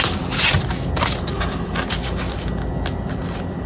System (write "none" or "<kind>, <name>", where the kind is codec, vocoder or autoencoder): none